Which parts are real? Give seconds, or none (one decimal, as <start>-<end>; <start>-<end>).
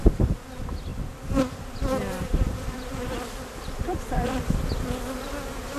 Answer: 0.0-0.9; 4.4-5.8